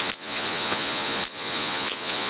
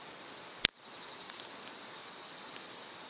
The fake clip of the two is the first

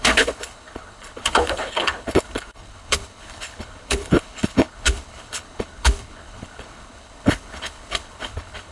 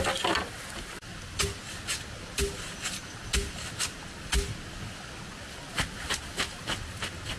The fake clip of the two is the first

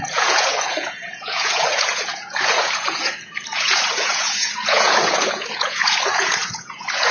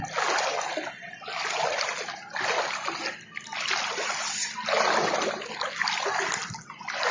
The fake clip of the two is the first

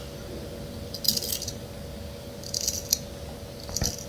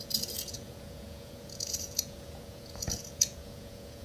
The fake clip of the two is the second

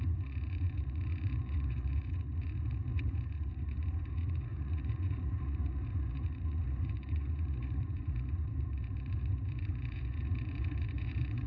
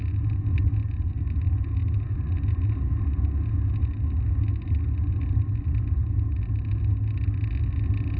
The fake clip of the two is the first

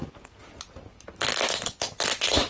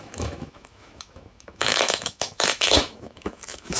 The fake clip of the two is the second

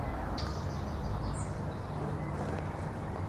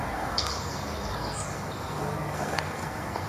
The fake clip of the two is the second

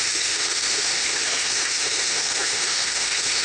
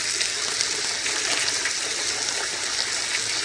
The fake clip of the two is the first